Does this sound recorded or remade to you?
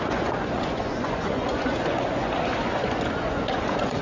remade